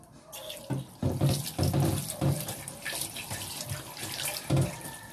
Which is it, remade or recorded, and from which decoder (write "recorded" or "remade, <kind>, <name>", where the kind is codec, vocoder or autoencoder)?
recorded